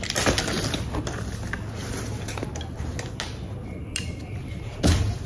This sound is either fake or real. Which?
real